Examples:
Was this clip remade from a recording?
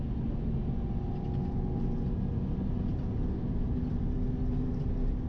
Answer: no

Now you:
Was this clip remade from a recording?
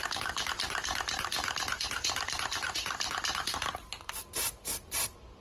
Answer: yes